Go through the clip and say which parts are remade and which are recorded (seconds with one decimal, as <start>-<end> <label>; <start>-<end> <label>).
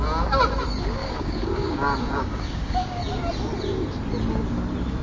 0.0-1.0 recorded; 1.0-3.0 remade; 3.0-5.0 recorded